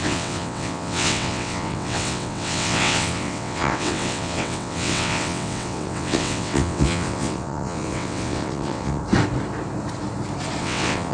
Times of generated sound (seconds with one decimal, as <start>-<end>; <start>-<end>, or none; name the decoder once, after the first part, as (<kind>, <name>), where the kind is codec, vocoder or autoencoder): 0.0-9.0 (vocoder, WaveNeXt); 10.6-11.1

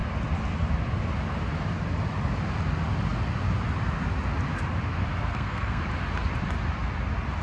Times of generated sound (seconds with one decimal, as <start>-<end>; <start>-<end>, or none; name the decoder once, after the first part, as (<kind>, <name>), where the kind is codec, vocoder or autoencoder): 5.1-5.8 (codec, SNAC)

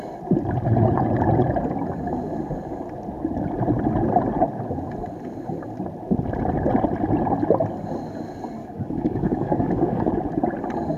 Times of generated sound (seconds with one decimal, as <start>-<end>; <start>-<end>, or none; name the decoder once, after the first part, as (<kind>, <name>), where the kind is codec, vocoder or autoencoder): 8.6-10.1 (codec, DAC)

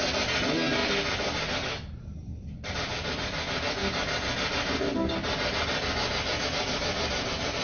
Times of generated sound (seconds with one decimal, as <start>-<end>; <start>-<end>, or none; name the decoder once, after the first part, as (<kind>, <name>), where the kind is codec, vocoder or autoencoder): none

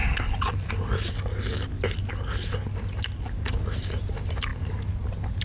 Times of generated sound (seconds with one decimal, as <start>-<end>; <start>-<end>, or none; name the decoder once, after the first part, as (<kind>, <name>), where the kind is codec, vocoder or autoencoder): none

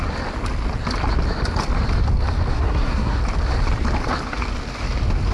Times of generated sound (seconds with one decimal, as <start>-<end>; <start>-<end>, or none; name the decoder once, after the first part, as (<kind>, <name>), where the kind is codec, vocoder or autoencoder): 2.5-3.2 (codec, SNAC)